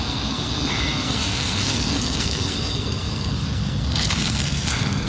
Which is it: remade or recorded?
remade